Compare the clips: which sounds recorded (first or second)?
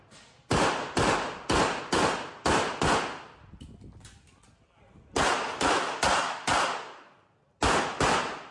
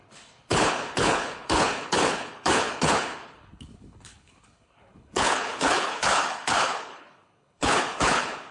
first